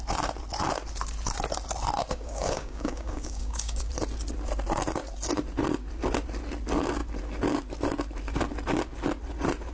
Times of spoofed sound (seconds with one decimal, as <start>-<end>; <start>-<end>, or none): 2.1-3.9